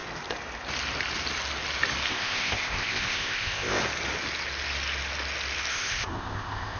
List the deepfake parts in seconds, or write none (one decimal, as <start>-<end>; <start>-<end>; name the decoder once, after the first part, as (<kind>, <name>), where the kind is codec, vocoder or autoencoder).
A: 2.1-3.8 (codec, ZipCodec); 5.7-6.8